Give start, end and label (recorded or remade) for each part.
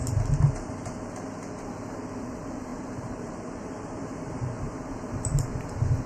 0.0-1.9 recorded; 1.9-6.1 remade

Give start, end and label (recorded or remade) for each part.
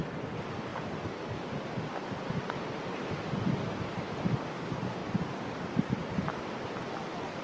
0.0-5.0 recorded; 5.0-5.8 remade; 5.8-7.4 recorded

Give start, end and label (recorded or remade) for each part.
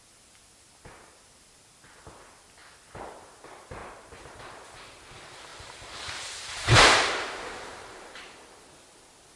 0.0-3.8 recorded; 3.8-4.3 remade; 4.3-5.5 recorded; 5.5-8.2 remade; 8.2-9.4 recorded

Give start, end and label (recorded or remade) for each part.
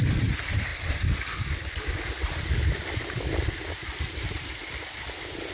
0.0-0.7 remade; 0.7-4.0 recorded; 4.0-5.5 remade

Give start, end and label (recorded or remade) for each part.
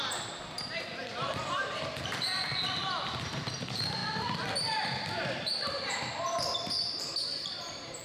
0.0-2.3 remade; 2.3-3.2 recorded; 3.2-4.0 remade; 4.0-4.7 recorded; 4.7-8.0 remade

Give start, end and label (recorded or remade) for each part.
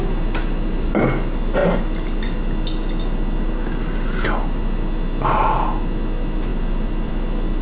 0.0-6.5 recorded; 6.5-7.1 remade; 7.1-7.6 recorded